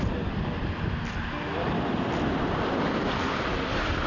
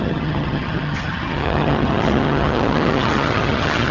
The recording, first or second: first